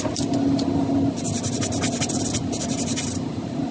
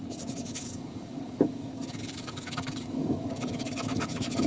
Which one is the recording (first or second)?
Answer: first